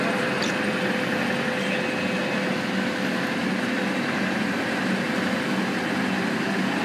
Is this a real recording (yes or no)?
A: yes